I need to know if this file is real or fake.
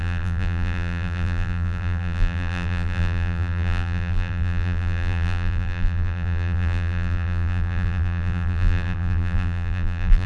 fake